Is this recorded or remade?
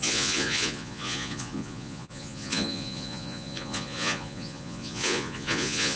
remade